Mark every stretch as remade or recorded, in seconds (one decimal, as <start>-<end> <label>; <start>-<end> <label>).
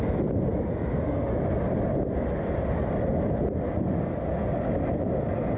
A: 0.0-0.5 recorded; 0.5-3.4 remade; 3.4-5.6 recorded